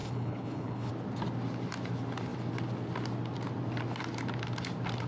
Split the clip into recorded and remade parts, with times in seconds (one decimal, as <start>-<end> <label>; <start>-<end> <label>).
0.0-0.9 remade; 0.9-5.1 recorded